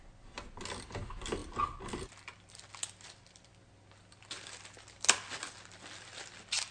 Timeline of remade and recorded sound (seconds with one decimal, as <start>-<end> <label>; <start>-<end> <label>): 0.0-6.7 recorded